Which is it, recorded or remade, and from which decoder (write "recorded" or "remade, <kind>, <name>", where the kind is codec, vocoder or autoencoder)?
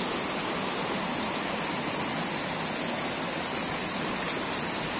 recorded